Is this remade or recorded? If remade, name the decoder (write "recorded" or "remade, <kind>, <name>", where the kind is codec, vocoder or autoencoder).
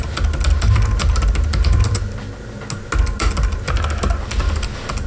recorded